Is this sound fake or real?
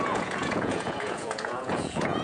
fake